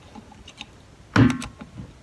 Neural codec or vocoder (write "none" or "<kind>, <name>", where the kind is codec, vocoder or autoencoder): none